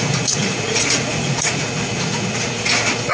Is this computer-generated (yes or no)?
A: yes